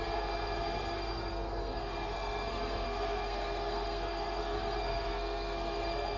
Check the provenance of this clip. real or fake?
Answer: fake